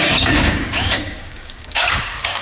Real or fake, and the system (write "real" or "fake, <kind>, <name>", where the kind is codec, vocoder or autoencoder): fake, codec, DAC